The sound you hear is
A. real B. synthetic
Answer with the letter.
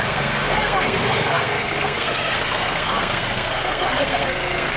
B